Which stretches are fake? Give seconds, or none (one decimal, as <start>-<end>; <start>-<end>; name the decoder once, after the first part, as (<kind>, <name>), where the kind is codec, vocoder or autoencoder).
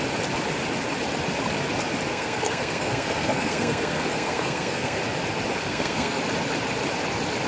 2.1-5.0 (codec, SNAC); 5.6-6.2